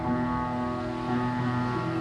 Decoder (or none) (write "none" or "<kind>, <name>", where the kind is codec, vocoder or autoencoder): none